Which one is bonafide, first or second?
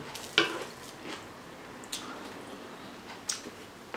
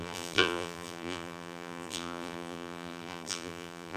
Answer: first